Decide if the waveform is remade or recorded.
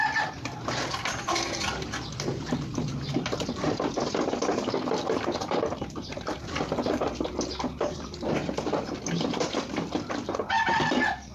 remade